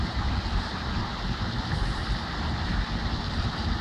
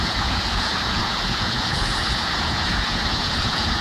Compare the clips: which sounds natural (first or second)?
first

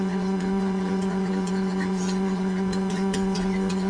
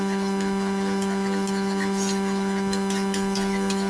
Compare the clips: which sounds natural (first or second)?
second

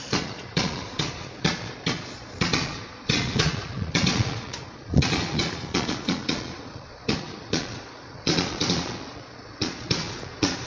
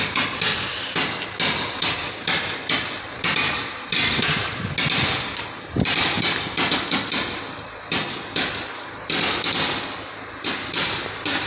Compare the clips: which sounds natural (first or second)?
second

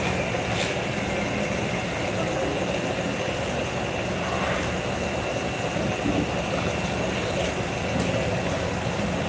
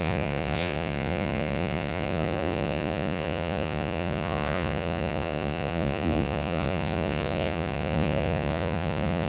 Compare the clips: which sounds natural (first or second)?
first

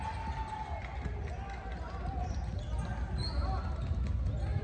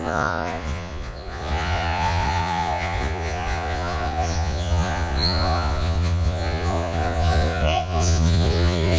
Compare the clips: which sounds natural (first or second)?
first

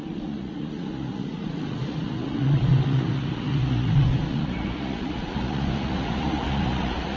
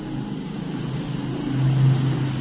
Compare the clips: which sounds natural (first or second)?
second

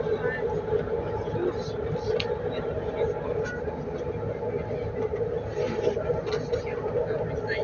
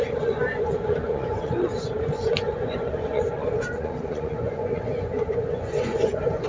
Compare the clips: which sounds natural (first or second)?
first